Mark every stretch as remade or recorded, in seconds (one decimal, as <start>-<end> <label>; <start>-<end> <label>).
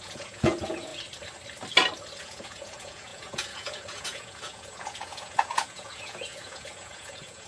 0.0-0.9 remade; 0.9-2.2 recorded; 2.2-7.5 remade